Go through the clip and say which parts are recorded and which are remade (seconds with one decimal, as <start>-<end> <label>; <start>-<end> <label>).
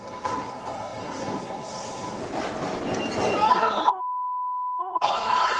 0.0-2.2 remade; 2.2-3.5 recorded; 3.5-4.0 remade; 4.0-4.8 recorded; 4.8-5.6 remade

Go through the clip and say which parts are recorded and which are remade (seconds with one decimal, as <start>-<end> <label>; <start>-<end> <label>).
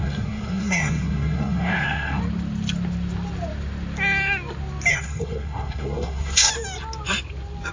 0.0-2.2 remade; 2.2-4.9 recorded; 4.9-6.5 remade; 6.5-7.7 recorded